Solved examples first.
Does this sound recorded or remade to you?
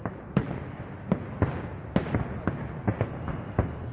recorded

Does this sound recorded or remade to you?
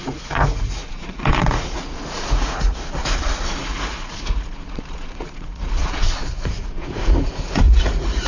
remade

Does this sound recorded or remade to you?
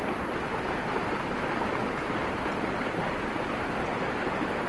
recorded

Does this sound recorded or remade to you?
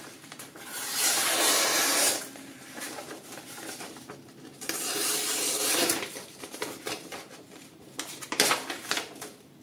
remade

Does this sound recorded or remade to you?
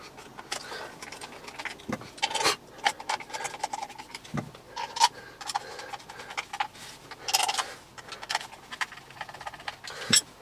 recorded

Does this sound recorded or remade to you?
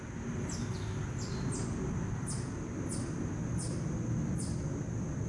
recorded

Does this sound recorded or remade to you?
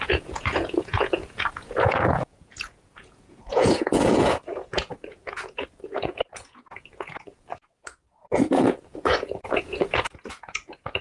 remade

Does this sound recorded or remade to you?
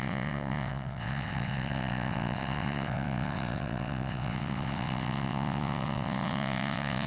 remade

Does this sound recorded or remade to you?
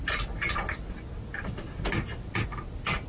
recorded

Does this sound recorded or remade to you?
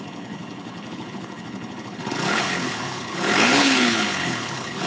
remade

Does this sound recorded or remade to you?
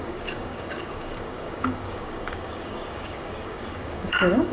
remade